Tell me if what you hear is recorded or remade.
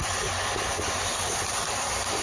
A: recorded